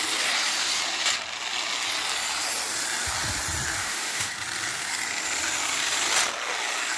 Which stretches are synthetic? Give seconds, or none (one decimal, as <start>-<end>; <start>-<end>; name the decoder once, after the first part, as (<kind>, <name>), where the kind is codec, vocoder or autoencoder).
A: 3.8-4.3 (autoencoder, DAC-VAE)